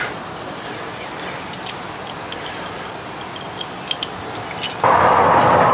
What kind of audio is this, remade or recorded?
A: recorded